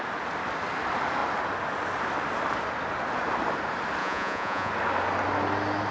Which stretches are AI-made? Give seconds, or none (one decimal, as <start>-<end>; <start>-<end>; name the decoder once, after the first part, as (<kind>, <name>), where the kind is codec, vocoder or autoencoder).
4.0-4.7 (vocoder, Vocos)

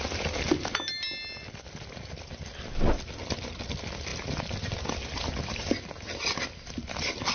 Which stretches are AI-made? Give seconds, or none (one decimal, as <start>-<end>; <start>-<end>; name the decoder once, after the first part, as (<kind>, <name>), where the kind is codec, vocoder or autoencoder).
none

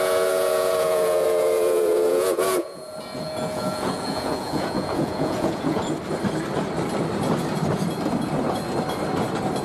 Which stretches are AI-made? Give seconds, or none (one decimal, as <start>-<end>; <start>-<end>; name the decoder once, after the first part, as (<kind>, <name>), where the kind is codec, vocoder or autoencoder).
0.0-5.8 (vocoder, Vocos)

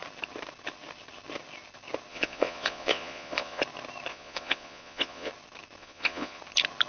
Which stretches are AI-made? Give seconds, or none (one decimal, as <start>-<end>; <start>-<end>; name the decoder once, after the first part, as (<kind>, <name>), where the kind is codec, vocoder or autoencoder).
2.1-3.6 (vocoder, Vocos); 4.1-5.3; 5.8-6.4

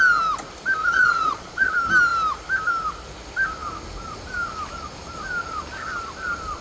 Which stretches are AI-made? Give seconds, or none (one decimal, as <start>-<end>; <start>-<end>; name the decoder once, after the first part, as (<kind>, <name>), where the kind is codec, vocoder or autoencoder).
0.8-1.7 (vocoder, Vocos)

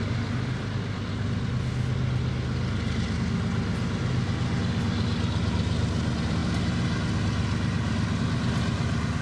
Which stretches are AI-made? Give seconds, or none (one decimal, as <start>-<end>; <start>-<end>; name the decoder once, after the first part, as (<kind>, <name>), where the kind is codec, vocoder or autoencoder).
none